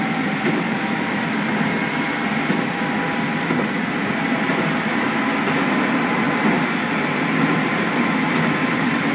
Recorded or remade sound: recorded